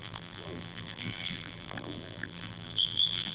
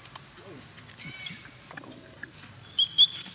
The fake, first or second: first